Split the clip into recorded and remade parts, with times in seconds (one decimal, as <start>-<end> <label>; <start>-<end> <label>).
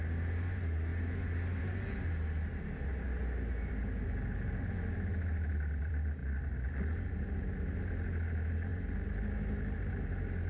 0.0-10.5 recorded